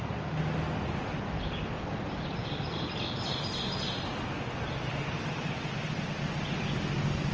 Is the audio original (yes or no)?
yes